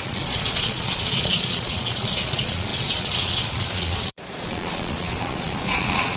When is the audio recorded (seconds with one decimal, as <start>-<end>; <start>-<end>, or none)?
none